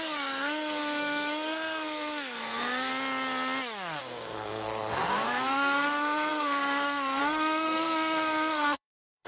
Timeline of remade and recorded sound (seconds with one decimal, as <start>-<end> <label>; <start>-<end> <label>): 0.0-2.9 remade; 2.9-4.0 recorded; 4.0-9.3 remade